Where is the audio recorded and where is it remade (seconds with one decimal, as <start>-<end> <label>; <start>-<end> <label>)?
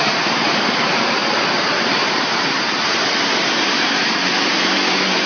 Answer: 0.0-5.3 remade